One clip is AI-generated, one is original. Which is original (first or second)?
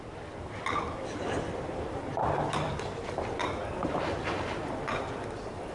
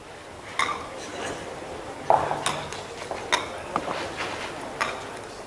second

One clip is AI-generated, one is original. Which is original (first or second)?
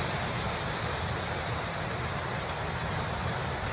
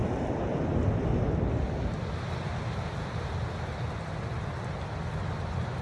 second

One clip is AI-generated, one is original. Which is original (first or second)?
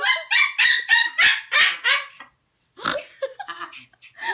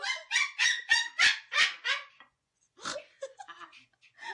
first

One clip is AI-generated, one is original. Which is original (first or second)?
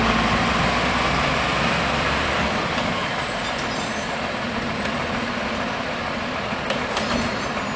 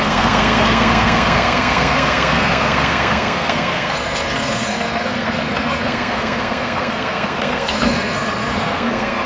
first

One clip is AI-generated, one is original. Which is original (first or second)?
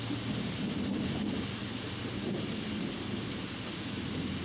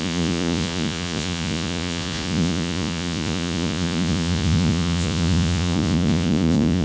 first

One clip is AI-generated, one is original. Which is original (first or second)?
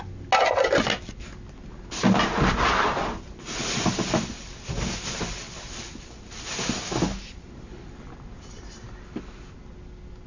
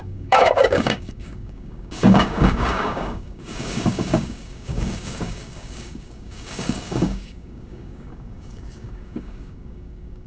first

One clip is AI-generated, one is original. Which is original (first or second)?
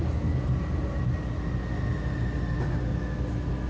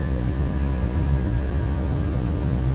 first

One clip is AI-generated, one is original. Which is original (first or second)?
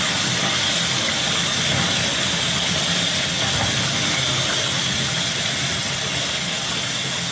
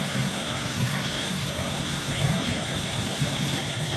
first